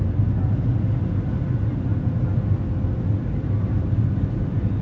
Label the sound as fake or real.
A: real